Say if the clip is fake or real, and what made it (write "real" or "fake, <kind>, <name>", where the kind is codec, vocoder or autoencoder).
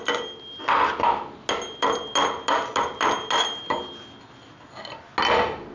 real